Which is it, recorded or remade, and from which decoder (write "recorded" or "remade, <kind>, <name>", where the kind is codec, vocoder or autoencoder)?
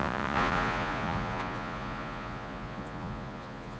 remade, vocoder, Vocos